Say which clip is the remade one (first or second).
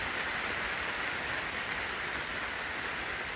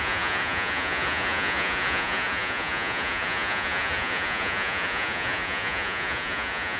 second